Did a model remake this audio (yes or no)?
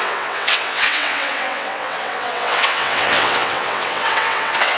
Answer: yes